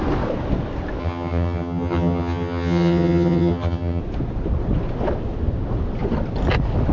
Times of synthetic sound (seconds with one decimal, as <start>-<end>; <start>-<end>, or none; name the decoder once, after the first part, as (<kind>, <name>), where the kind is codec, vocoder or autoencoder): 1.0-4.0 (vocoder, HiFi-GAN)